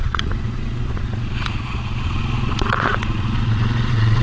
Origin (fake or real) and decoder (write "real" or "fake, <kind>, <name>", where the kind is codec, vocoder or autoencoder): fake, vocoder, Vocos